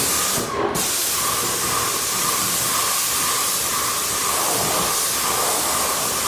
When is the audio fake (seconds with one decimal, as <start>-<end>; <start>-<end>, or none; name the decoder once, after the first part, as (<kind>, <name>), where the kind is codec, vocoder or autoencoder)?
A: 2.2-3.7 (vocoder, BigVGAN v2)